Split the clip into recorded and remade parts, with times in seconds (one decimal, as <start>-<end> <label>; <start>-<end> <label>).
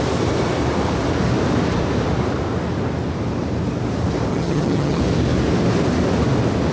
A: 0.0-4.3 recorded; 4.3-5.0 remade; 5.0-6.7 recorded